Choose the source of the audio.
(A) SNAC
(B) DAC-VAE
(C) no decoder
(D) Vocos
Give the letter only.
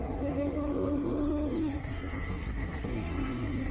A